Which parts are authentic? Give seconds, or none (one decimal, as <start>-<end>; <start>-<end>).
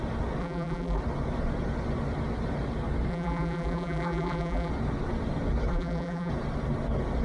0.0-0.4; 1.0-3.1; 4.7-5.7; 6.3-7.2